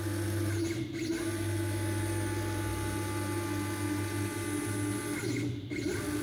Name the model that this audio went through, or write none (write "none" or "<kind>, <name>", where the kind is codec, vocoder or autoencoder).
none